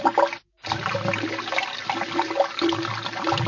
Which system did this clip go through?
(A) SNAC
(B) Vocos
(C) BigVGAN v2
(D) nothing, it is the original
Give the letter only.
D